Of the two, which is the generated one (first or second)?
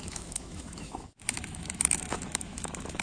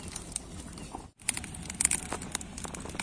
first